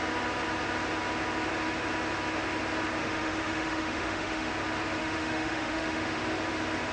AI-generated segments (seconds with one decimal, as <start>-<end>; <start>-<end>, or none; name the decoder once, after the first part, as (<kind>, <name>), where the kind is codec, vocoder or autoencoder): 3.0-4.5 (autoencoder, DAC-VAE); 5.0-6.2